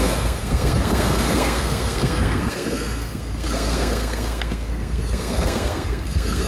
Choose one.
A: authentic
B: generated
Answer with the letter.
B